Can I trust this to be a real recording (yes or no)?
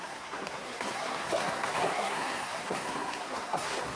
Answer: no